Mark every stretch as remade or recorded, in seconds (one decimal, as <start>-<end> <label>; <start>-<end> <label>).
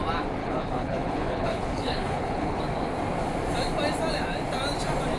0.0-0.4 recorded; 0.4-2.6 remade; 2.6-5.2 recorded